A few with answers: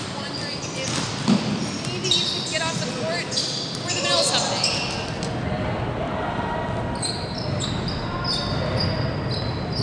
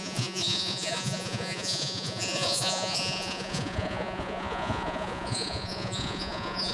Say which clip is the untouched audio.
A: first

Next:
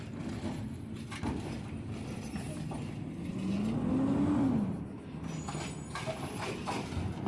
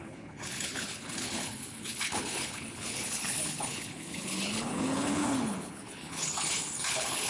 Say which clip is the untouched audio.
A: first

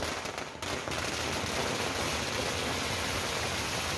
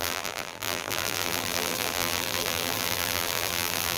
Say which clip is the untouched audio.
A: first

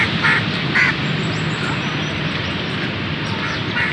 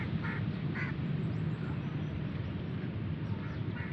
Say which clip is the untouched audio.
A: first